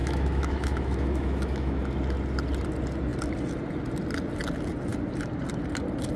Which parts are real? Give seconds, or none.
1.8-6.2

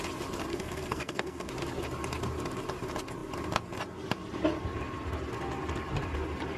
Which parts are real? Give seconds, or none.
0.0-0.5; 1.5-6.6

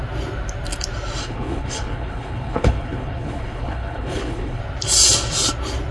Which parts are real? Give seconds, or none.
0.0-1.2; 4.6-5.9

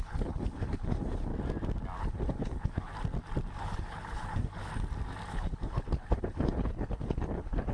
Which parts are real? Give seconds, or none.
1.3-2.0; 2.9-3.6; 4.7-5.3

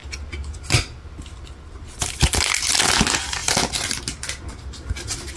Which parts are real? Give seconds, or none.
2.0-5.4